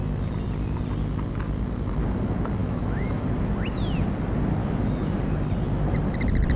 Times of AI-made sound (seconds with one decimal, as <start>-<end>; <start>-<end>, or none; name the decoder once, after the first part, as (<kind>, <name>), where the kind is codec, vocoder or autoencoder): 2.6-3.2 (autoencoder, DAC-VAE); 4.6-5.2